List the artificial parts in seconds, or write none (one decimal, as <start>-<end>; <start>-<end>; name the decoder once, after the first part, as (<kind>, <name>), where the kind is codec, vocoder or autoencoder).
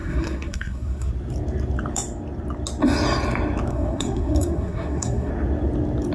0.0-1.1 (codec, SNAC); 3.7-5.3